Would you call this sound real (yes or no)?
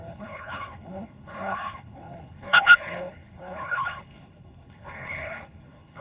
no